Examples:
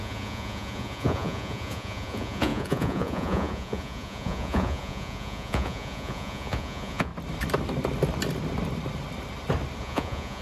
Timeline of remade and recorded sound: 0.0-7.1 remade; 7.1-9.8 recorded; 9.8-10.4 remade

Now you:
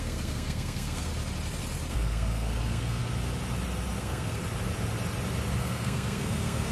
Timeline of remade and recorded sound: 0.0-1.1 remade; 1.1-1.9 recorded; 1.9-3.0 remade; 3.0-4.0 recorded; 4.0-4.4 remade; 4.4-5.6 recorded; 5.6-6.7 remade